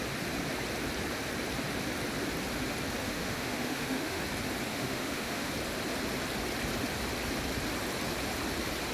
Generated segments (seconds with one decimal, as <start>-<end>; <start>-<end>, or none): 3.0-4.2; 4.7-5.5

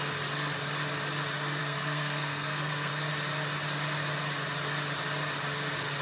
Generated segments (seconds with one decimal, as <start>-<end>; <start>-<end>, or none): 1.6-2.9

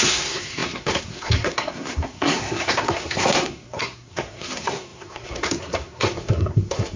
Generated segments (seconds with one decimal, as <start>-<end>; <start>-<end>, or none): 0.0-7.0

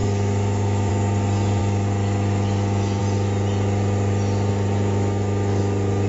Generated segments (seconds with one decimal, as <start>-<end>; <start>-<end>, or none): 0.0-0.9; 1.6-3.0; 4.5-5.6

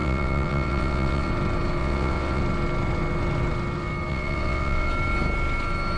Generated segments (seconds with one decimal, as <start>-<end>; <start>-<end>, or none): 0.0-1.3; 1.8-2.4; 4.1-4.9

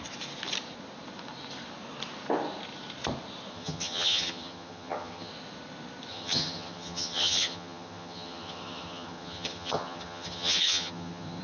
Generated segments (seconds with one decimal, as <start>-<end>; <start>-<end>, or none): 3.5-5.3; 6.1-11.4

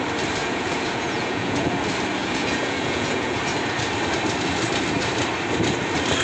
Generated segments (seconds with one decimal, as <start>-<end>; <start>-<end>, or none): 0.4-1.7; 2.2-3.4